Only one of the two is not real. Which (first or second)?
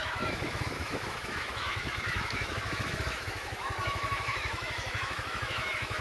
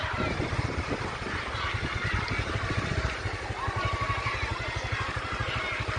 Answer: first